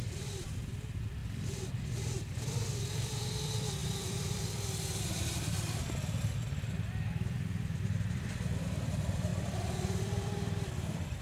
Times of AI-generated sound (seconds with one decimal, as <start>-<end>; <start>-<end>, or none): 0.0-9.3; 10.0-11.2